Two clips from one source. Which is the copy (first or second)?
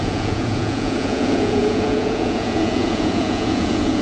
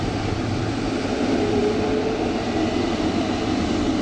first